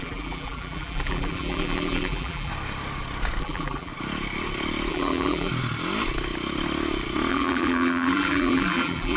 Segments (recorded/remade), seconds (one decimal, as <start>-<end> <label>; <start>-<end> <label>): 0.0-2.5 remade; 2.5-3.4 recorded; 3.4-3.9 remade; 3.9-4.9 recorded; 4.9-5.5 remade; 5.5-7.3 recorded; 7.3-9.2 remade